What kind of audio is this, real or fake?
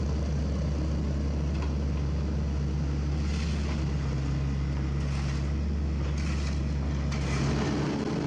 real